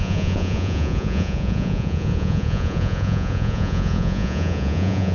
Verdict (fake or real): fake